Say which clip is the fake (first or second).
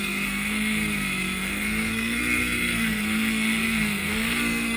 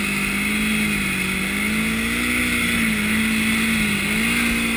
first